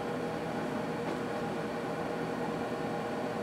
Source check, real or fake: real